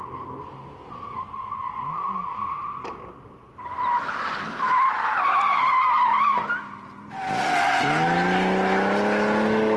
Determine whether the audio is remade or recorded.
recorded